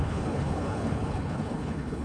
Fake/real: fake